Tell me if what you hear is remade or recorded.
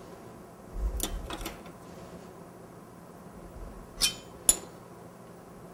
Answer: recorded